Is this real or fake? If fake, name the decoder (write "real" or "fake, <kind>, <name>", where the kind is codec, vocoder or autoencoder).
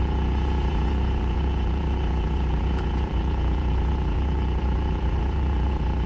fake, vocoder, Vocos